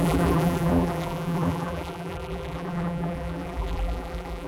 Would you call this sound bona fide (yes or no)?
no